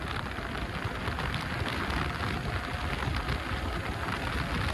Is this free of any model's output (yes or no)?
yes